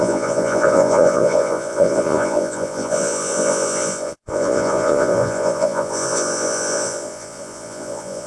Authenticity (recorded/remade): remade